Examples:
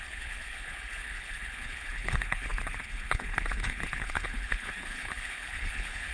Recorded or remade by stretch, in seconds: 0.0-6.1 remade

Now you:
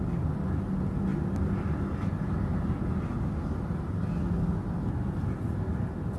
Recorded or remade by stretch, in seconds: 0.0-6.2 recorded